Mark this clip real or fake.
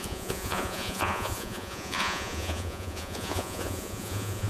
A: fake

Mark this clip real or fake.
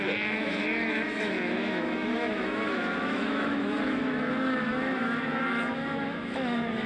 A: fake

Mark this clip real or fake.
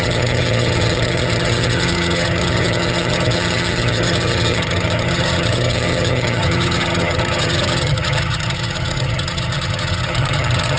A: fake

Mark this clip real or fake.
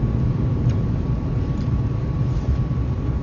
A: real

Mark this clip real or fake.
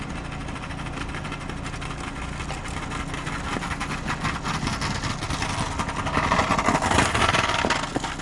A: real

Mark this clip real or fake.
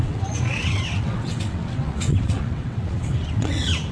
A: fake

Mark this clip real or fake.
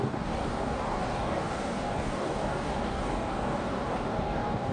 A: fake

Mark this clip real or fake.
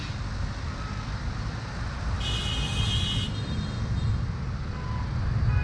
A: real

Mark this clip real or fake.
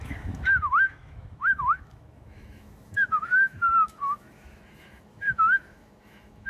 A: fake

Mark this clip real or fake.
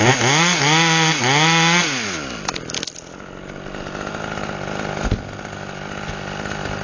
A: real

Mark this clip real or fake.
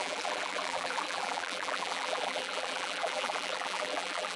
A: fake